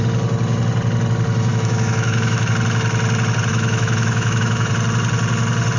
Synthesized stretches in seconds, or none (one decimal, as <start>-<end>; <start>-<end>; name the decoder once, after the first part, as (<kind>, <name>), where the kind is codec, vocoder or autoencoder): 1.5-2.5 (autoencoder, DAC-VAE); 3.5-4.7